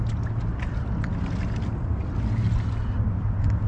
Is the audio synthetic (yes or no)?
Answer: no